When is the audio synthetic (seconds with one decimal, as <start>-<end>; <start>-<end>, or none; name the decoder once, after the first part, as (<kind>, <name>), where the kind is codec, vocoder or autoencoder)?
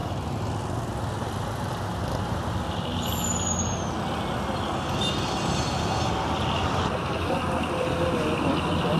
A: none